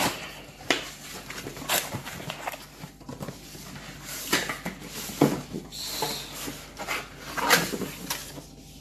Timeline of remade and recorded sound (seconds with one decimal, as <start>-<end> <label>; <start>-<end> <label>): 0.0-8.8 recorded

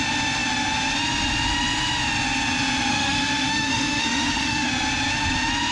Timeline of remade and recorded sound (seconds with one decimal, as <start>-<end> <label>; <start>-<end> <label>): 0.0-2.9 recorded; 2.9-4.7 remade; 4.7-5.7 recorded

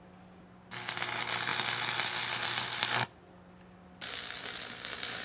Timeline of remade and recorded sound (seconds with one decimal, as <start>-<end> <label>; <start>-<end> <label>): 0.0-5.2 recorded